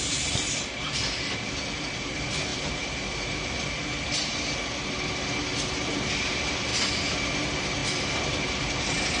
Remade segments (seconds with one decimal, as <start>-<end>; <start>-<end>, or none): 0.0-2.5; 6.3-6.7; 7.3-7.8; 8.6-9.2